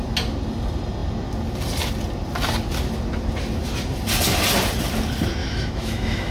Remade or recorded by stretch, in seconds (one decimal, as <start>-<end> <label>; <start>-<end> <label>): 0.0-5.4 recorded; 5.4-6.3 remade